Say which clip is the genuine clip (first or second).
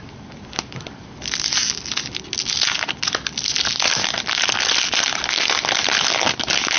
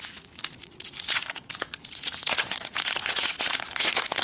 first